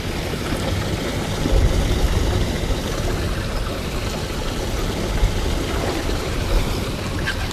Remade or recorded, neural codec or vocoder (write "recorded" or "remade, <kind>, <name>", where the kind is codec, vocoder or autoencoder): recorded